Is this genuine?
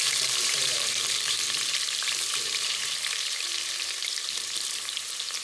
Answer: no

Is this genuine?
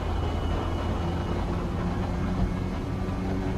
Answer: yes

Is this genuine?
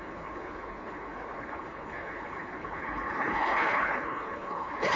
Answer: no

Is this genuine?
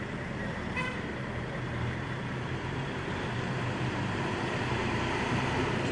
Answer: no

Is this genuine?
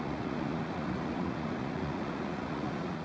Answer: no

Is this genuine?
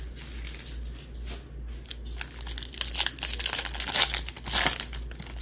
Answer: yes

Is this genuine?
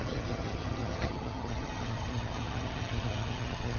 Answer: no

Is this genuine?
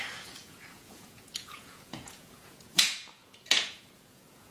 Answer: no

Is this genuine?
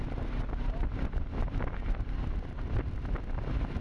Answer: yes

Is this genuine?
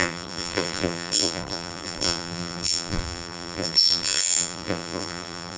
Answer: no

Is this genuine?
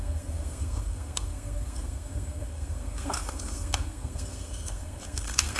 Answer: no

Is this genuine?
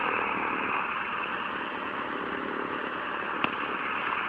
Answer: yes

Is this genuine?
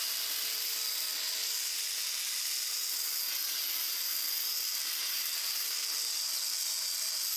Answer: yes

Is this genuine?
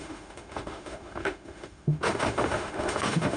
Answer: no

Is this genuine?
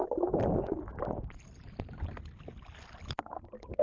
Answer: yes